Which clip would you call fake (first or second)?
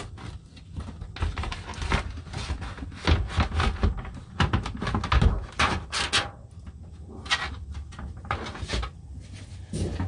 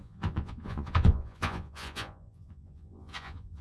second